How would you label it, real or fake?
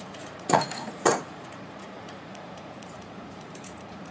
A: fake